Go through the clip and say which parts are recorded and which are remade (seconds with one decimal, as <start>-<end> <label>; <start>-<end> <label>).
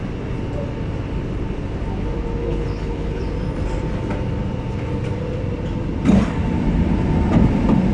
0.0-2.4 recorded; 2.4-3.2 remade; 3.2-7.9 recorded